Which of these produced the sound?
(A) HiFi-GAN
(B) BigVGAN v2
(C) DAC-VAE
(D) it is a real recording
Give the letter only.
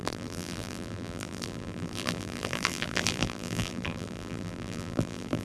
B